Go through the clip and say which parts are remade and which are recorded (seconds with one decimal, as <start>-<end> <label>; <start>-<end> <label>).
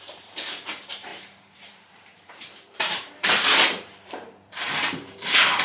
0.0-5.6 remade